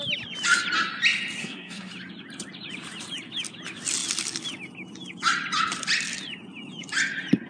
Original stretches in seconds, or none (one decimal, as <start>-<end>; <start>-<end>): 0.0-1.4; 1.9-7.5